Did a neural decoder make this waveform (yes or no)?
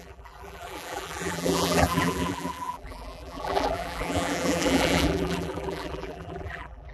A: yes